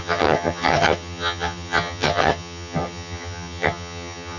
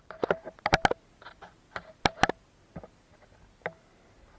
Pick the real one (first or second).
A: second